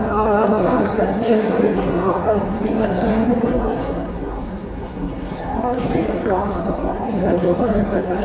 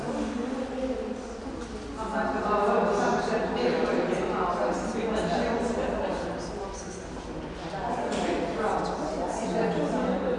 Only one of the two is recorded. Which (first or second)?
second